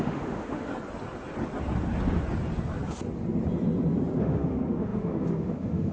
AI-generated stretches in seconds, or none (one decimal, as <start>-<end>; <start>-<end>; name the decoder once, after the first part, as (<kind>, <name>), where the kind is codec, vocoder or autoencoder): 0.0-0.7 (autoencoder, DAC-VAE); 4.2-5.9